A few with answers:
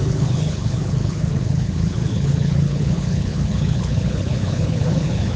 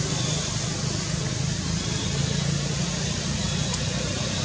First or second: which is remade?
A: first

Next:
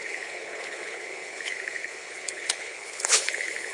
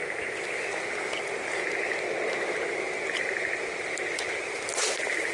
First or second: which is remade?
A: first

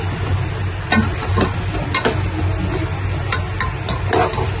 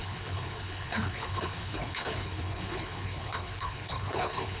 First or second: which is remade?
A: second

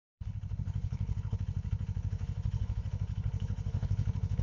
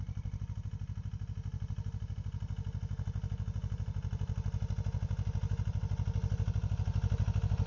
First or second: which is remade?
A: first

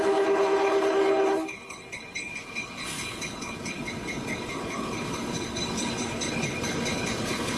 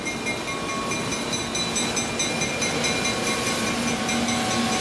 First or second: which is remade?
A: first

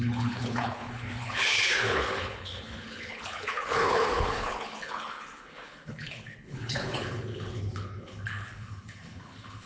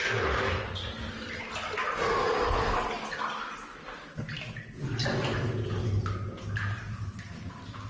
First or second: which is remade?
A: first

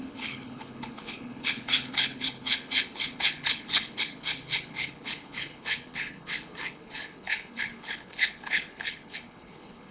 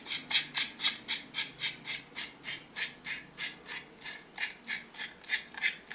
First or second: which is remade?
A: first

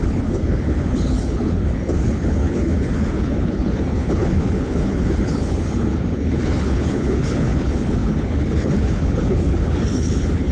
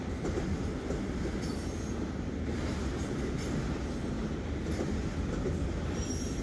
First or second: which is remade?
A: first